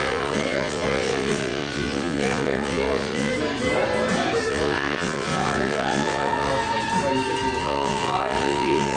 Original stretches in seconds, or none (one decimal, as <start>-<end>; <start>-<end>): 3.3-4.5; 6.5-7.6